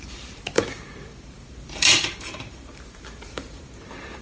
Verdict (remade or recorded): remade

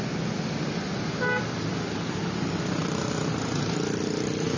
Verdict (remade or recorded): recorded